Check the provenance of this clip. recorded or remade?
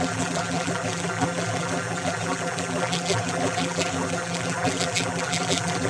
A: remade